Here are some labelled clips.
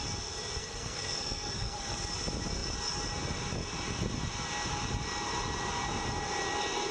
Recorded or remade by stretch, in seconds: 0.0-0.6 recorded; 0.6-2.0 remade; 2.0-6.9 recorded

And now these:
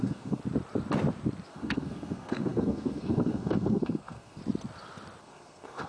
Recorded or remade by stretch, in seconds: 0.0-0.4 remade; 0.4-1.5 recorded; 1.5-4.4 remade; 4.4-5.2 recorded; 5.2-5.9 remade